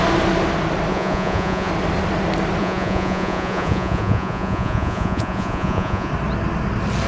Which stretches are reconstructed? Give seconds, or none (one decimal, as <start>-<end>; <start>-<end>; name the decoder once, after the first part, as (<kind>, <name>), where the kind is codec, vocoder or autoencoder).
0.9-1.7 (vocoder, Vocos); 2.6-6.1